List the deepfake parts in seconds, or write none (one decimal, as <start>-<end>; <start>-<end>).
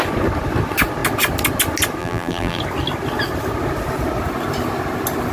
2.0-2.6